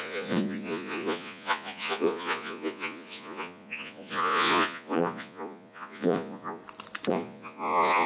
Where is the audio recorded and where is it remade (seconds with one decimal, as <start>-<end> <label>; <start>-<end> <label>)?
0.0-6.6 remade; 6.6-7.1 recorded; 7.1-8.1 remade

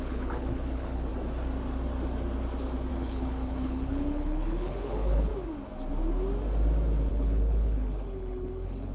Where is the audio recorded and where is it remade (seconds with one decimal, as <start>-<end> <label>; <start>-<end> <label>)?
0.0-1.1 remade; 1.1-2.9 recorded; 2.9-5.3 remade; 5.3-7.1 recorded; 7.1-8.9 remade

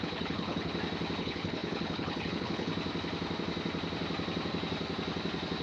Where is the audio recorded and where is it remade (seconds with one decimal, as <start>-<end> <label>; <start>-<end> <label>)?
0.0-0.7 remade; 0.7-1.2 recorded; 1.2-2.7 remade; 2.7-5.6 recorded

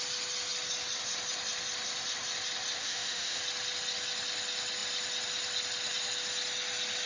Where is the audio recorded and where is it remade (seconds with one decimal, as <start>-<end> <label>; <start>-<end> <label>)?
0.0-2.8 recorded; 2.8-3.4 remade; 3.4-7.1 recorded

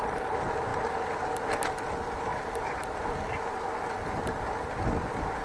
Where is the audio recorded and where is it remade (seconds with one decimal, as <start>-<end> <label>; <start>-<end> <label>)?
0.0-5.4 recorded